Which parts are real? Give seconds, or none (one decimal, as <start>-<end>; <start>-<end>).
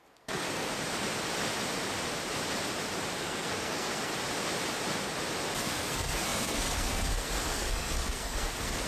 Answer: 0.7-3.2; 4.1-5.6